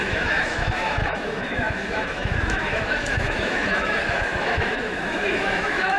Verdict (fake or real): fake